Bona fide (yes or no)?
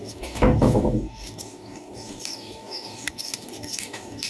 no